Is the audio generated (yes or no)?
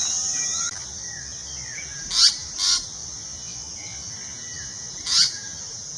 no